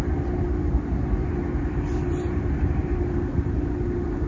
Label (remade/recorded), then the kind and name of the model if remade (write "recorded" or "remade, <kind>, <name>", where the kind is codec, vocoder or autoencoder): remade, vocoder, BigVGAN v2